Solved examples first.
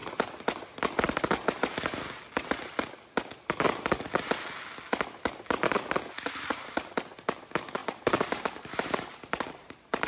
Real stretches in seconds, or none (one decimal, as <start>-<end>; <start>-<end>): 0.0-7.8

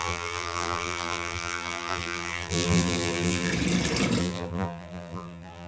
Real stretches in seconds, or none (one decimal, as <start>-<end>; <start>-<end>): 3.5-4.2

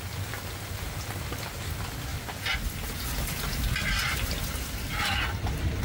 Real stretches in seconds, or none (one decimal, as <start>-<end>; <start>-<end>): 0.0-5.8